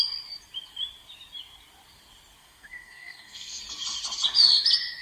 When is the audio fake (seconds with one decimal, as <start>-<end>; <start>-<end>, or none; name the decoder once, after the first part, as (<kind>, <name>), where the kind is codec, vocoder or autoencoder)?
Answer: 2.4-3.6 (codec, SNAC)